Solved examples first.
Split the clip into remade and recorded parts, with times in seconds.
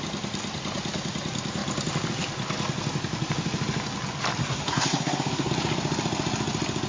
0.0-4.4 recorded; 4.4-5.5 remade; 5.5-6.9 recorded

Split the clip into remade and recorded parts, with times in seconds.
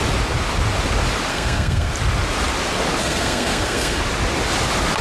0.0-1.3 recorded; 1.3-1.9 remade; 1.9-3.0 recorded; 3.0-4.0 remade; 4.0-5.0 recorded